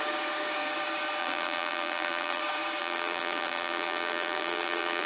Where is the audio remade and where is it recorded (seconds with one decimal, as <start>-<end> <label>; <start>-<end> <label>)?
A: 0.0-1.2 recorded; 1.2-2.4 remade; 2.4-2.8 recorded; 2.8-5.1 remade